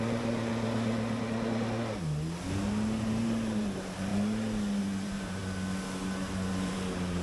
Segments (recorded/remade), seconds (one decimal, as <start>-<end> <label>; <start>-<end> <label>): 0.0-0.5 remade; 0.5-3.0 recorded; 3.0-4.1 remade; 4.1-4.8 recorded; 4.8-5.4 remade; 5.4-6.5 recorded; 6.5-7.2 remade